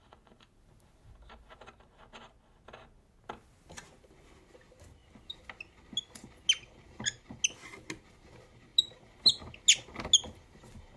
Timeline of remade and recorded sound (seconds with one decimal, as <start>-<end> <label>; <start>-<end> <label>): 0.0-11.0 recorded